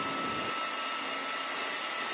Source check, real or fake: real